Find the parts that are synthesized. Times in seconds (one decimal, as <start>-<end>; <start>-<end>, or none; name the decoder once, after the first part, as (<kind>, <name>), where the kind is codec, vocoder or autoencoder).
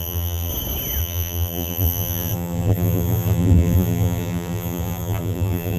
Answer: 0.0-0.5 (vocoder, BigVGAN v2); 1.0-5.8